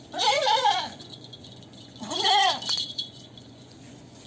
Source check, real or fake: fake